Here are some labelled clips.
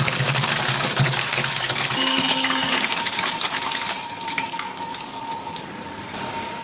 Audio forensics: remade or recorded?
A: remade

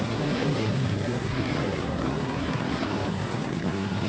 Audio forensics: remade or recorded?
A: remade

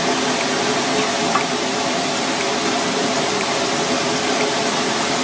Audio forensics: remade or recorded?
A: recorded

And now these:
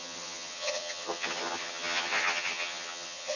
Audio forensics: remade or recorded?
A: remade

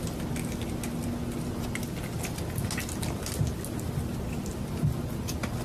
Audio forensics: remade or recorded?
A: recorded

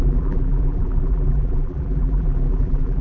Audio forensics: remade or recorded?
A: remade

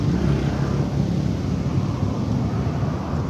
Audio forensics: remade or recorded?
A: recorded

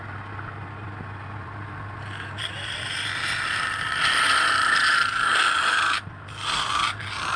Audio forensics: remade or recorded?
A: recorded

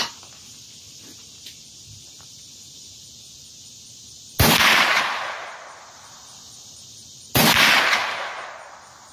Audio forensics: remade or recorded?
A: recorded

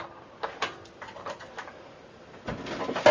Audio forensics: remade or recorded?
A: recorded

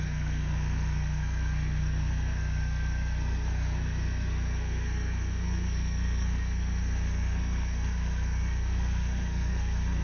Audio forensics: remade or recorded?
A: remade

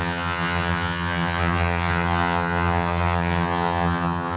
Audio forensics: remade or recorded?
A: remade